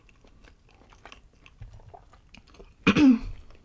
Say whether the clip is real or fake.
real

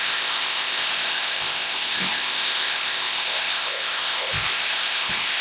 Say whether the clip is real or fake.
fake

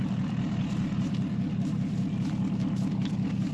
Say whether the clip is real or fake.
real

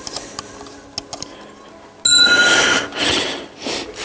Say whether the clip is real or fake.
real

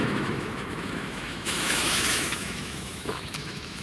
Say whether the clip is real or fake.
fake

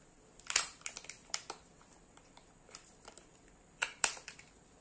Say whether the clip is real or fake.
fake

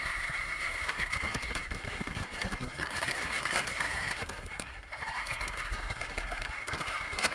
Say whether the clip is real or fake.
fake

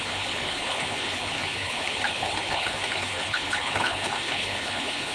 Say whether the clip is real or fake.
fake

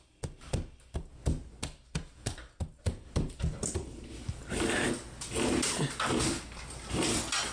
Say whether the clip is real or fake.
real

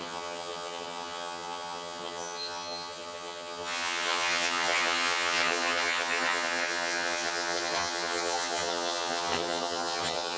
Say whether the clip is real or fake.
fake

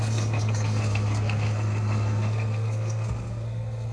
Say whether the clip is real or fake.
fake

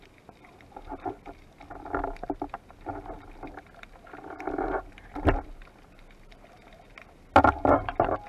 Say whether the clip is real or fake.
real